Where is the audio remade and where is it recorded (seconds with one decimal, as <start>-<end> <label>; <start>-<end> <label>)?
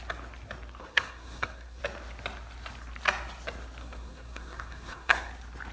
0.0-0.8 recorded; 0.8-1.8 remade; 1.8-3.8 recorded; 3.8-5.3 remade; 5.3-5.7 recorded